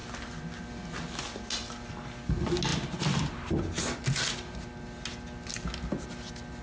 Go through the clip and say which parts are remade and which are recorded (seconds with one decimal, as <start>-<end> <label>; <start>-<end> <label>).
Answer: 0.0-6.6 recorded